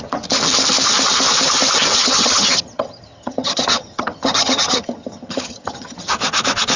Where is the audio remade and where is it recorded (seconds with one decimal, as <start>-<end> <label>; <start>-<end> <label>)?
0.0-2.0 recorded; 2.0-6.1 remade; 6.1-6.8 recorded